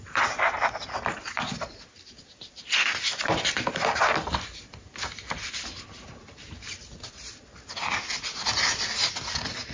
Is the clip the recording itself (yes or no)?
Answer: yes